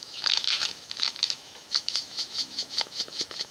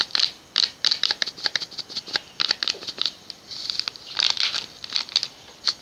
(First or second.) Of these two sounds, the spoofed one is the first